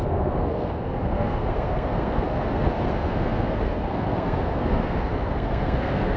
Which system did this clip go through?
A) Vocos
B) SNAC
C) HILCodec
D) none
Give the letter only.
B